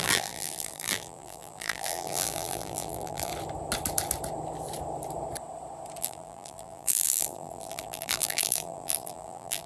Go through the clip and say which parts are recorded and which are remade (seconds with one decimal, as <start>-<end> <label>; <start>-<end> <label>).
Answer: 0.0-3.3 remade; 3.3-6.0 recorded; 6.0-9.7 remade